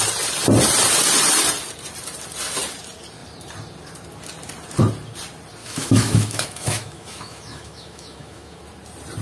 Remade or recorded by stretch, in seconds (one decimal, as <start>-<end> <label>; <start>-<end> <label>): 0.0-5.6 recorded; 5.6-8.6 remade; 8.6-9.2 recorded